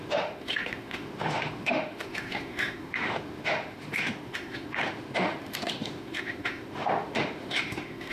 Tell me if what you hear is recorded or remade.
remade